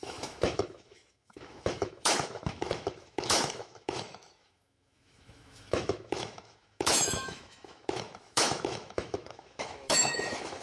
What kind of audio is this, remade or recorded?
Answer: remade